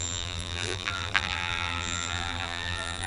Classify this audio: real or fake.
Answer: fake